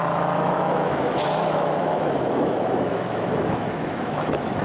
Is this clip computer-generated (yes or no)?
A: yes